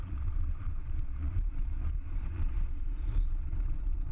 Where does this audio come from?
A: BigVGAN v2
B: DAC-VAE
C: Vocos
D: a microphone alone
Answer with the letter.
C